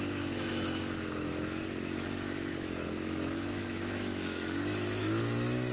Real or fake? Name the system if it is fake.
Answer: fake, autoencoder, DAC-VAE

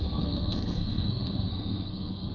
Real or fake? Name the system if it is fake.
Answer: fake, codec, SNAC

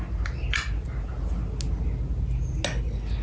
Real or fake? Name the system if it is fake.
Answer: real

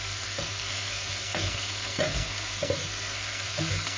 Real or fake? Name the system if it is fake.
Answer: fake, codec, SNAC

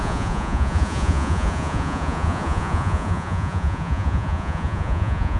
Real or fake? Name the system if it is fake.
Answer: fake, vocoder, Vocos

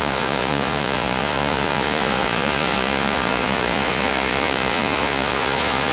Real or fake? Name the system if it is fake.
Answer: fake, vocoder, Vocos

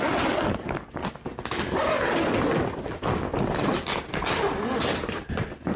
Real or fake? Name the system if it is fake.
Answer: real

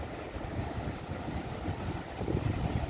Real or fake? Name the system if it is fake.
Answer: real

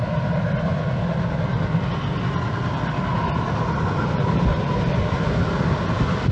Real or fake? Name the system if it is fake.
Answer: real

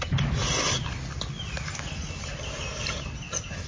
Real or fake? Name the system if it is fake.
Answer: real